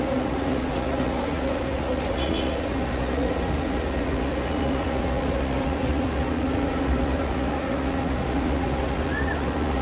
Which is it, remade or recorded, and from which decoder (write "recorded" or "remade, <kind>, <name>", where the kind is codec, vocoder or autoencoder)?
remade, vocoder, Vocos